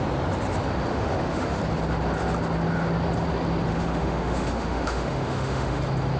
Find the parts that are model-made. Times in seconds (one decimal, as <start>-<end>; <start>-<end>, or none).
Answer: 0.9-1.6; 3.7-5.8